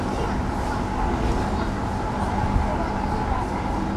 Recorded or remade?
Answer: recorded